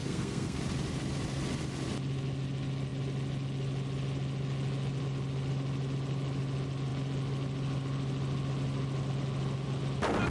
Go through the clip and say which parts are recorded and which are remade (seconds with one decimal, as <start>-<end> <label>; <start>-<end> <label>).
0.0-0.6 remade; 0.6-10.3 recorded